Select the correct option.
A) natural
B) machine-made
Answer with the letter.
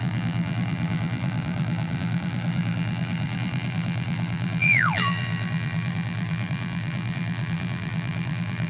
B